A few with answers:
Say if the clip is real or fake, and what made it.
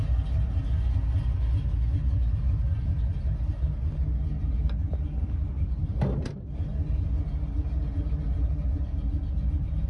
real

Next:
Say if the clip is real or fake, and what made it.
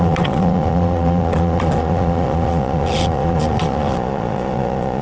fake, vocoder, Vocos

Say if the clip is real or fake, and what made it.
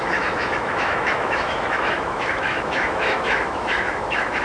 fake, autoencoder, DAC-VAE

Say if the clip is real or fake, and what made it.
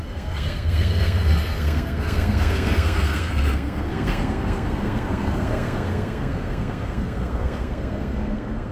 fake, codec, SNAC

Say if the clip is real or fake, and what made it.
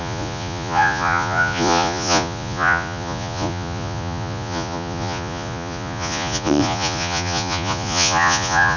fake, vocoder, Vocos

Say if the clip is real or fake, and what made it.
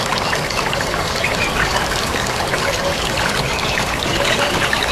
fake, codec, DAC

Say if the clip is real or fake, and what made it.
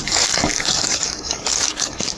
fake, codec, DAC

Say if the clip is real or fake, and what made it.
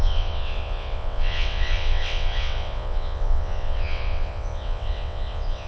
fake, vocoder, WaveNeXt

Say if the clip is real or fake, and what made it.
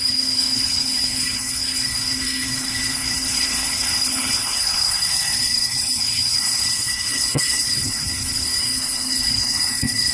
fake, codec, HILCodec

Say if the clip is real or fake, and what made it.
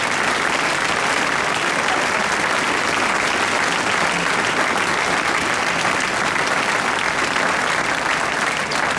real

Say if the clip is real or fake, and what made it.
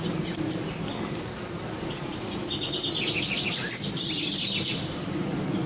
real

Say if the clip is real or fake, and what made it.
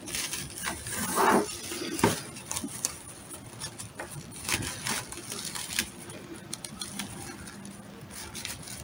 real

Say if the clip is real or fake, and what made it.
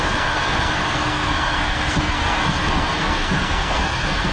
fake, codec, SNAC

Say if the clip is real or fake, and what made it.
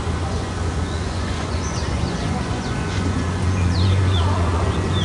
fake, vocoder, Vocos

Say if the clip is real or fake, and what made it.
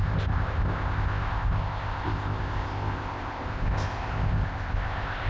fake, codec, ZipCodec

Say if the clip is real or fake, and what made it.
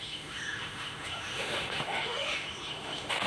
fake, autoencoder, DAC-VAE